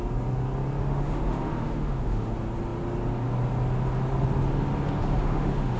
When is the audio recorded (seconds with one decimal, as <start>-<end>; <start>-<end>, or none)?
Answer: 0.0-0.8; 2.3-5.0